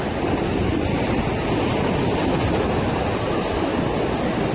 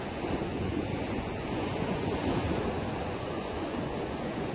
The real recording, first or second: first